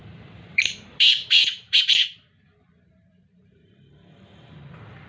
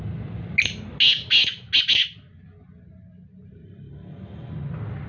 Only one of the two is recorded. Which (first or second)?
second